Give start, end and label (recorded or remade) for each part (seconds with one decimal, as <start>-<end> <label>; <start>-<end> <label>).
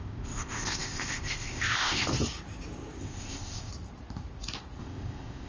0.0-2.1 remade; 2.1-3.0 recorded; 3.0-3.7 remade; 3.7-4.8 recorded; 4.8-5.5 remade